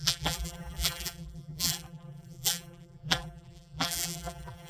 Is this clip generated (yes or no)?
yes